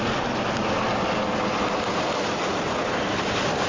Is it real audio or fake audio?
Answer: real